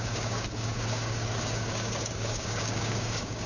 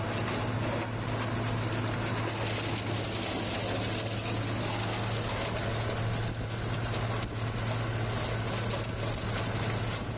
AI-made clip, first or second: first